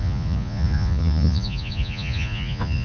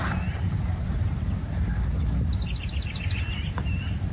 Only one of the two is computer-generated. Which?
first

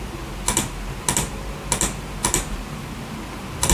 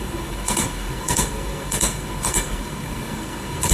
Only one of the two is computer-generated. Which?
second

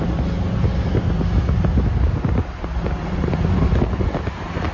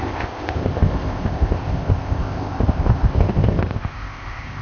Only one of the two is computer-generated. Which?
second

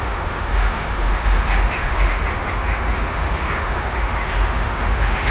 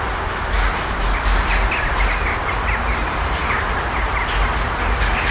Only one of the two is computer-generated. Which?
first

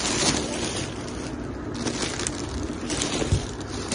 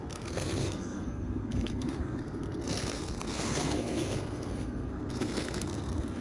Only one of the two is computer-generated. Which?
second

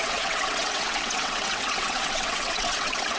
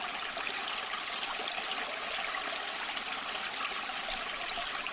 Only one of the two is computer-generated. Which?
first